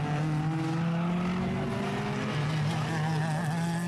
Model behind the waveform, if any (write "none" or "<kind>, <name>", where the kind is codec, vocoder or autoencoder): none